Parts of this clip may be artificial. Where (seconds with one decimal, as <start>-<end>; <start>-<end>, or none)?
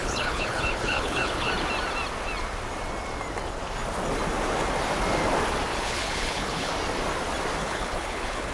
0.0-1.5; 5.7-6.7; 7.6-8.5